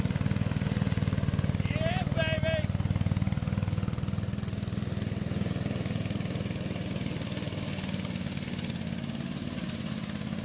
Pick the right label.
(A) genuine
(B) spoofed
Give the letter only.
A